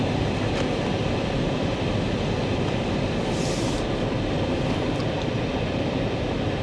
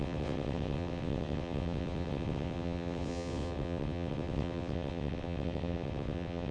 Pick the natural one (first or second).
first